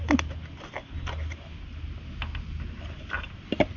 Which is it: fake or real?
real